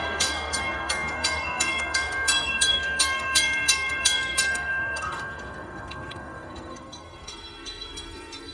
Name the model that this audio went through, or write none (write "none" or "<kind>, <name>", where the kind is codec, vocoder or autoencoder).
codec, SNAC